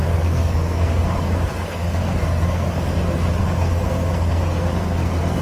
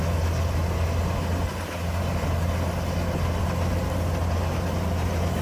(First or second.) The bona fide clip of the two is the second